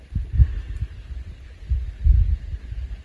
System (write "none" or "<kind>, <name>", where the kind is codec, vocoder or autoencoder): none